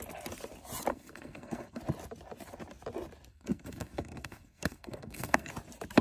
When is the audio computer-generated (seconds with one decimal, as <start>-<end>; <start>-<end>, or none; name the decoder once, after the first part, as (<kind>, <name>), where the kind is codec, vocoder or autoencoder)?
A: 0.9-1.8 (codec, SNAC); 3.3-5.5